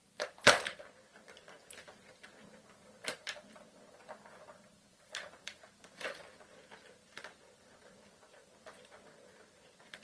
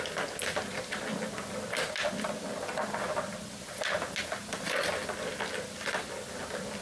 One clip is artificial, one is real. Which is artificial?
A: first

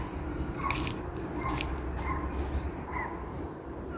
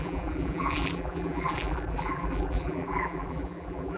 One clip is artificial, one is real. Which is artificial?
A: second